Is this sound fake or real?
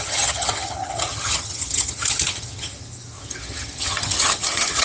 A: fake